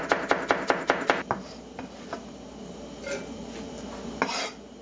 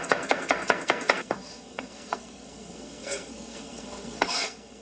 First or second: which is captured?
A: first